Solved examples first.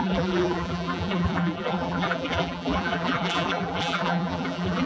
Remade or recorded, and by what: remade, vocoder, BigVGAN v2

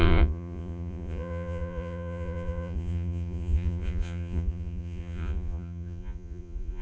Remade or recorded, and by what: remade, vocoder, Vocos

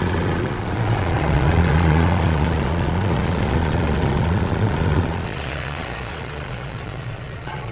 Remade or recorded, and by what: remade, vocoder, Vocos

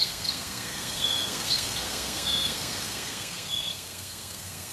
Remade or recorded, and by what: remade, codec, SNAC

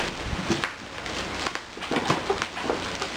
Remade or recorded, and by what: recorded